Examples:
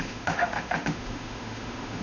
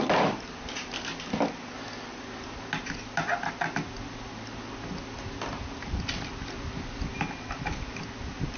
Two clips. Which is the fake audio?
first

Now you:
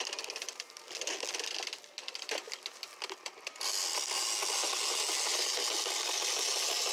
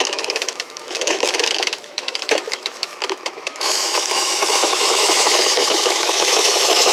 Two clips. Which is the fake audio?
second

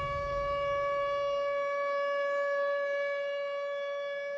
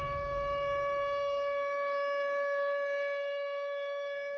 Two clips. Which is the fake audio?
second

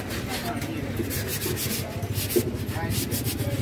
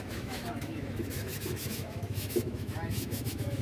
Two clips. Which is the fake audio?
second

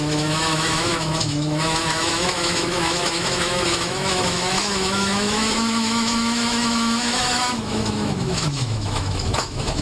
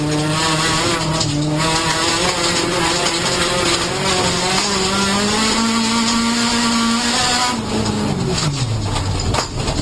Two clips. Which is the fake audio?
first